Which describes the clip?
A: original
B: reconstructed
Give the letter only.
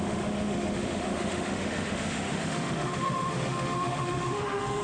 B